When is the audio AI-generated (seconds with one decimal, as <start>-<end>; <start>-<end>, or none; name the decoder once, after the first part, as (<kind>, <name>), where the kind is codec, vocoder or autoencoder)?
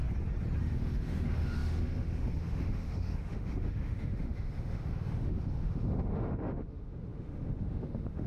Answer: 0.6-8.3 (autoencoder, DAC-VAE)